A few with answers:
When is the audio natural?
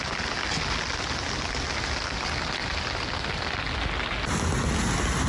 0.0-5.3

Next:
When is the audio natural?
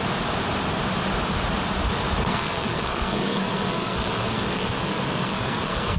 0.0-2.3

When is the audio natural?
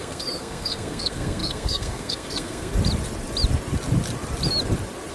2.7-5.1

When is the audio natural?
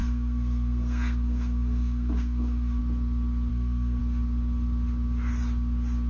2.8-3.5; 4.0-6.1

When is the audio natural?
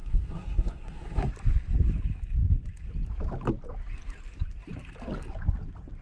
1.3-6.0